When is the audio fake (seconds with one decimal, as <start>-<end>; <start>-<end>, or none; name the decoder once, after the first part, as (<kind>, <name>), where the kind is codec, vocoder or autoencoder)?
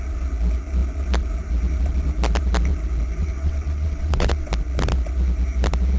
3.2-4.5 (vocoder, WaveNeXt)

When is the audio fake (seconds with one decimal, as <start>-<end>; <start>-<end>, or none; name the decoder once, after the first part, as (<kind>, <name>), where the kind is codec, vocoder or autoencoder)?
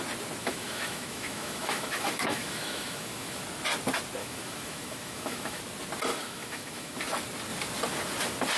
0.4-3.4 (autoencoder, DAC-VAE); 4.2-5.6; 6.1-7.0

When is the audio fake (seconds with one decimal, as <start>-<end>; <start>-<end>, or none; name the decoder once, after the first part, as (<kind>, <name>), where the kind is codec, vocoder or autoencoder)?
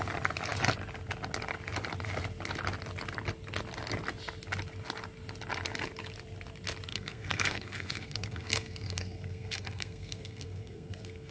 6.9-11.3 (codec, SNAC)